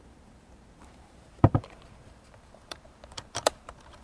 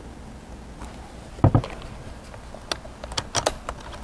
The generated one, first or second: first